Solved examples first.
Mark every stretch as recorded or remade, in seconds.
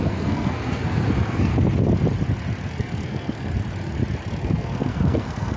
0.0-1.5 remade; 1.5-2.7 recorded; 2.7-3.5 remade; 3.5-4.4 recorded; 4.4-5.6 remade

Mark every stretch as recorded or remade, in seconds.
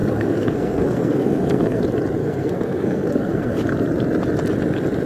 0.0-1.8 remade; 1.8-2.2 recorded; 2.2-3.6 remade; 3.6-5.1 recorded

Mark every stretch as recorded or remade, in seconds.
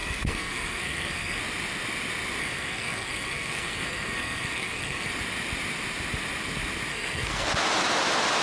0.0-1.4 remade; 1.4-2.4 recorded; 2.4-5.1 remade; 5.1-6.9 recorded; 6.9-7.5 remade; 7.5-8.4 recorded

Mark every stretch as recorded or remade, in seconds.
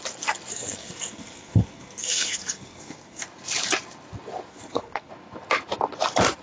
0.0-0.5 recorded; 0.5-3.2 remade; 3.2-4.5 recorded; 4.5-5.1 remade; 5.1-6.4 recorded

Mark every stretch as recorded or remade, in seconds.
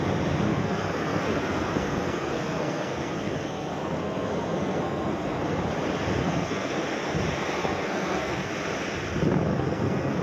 0.0-0.5 recorded; 0.5-5.6 remade; 5.6-6.2 recorded; 6.2-6.8 remade; 6.8-7.6 recorded; 7.6-8.5 remade; 8.5-9.5 recorded; 9.5-10.2 remade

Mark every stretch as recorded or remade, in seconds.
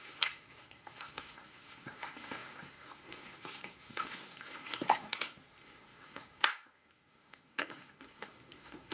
0.0-8.9 remade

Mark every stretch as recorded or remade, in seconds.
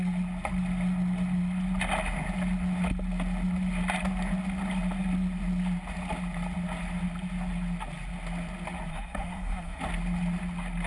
0.0-8.9 recorded; 8.9-9.8 remade; 9.8-10.9 recorded